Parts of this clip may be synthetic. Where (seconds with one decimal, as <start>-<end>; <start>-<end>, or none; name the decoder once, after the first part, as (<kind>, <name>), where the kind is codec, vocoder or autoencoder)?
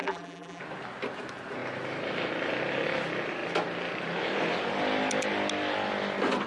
0.0-0.6 (vocoder, BigVGAN v2)